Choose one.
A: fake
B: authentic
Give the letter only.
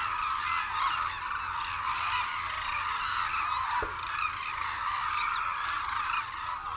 B